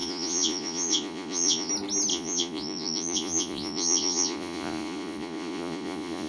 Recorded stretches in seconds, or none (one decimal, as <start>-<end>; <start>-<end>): 1.7-2.1

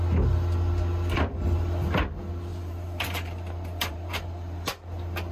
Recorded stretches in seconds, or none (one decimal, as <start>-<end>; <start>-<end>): 0.0-2.5; 4.7-5.3

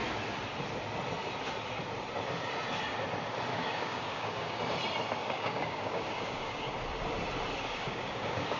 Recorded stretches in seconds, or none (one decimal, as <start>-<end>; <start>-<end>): 0.0-3.5; 4.6-5.2; 6.7-7.6

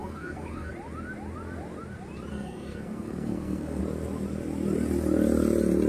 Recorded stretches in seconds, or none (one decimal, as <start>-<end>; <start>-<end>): 0.7-2.3; 3.8-5.9